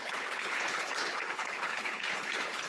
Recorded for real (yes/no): no